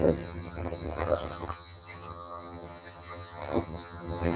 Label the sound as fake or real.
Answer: fake